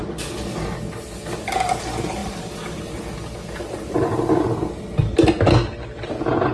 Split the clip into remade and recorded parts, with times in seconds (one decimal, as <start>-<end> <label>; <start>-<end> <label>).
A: 0.0-6.5 recorded